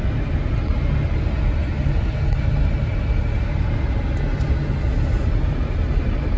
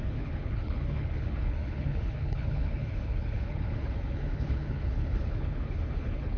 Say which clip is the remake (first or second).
second